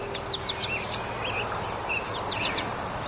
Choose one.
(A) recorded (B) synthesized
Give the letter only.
A